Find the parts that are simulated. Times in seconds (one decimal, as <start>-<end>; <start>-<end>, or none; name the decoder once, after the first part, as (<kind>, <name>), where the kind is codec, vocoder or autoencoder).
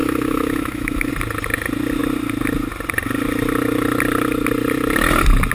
0.0-1.1 (autoencoder, DAC-VAE)